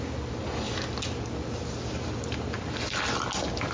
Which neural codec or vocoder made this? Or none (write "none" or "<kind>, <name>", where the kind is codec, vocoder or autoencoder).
none